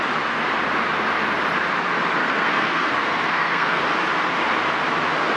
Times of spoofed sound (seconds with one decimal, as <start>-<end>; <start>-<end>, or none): 2.2-3.8